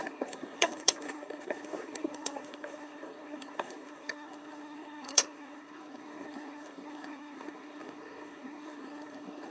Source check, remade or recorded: remade